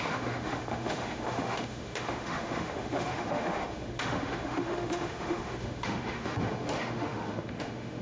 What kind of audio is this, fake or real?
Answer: fake